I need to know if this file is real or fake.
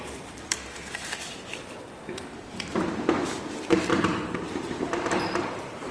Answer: fake